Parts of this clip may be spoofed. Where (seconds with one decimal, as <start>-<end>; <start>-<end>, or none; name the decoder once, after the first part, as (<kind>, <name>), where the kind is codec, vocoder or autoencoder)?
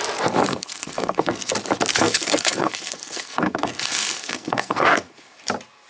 0.5-1.5 (codec, SNAC); 1.9-5.4